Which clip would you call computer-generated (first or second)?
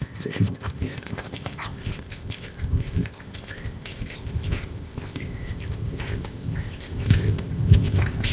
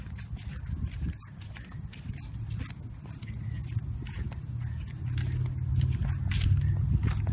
first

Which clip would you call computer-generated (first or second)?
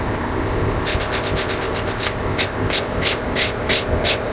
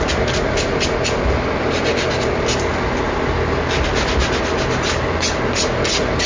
first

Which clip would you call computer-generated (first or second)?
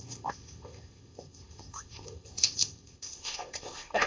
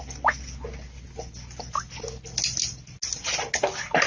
first